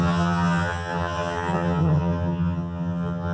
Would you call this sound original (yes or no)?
no